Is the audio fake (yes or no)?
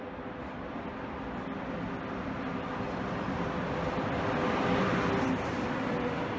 no